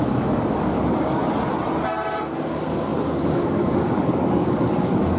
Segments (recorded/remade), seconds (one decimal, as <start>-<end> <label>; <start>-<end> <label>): 0.0-1.2 remade; 1.2-2.3 recorded; 2.3-5.2 remade